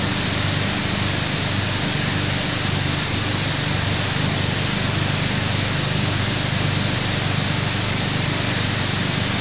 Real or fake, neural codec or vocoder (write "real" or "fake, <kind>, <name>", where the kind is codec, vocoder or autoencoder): real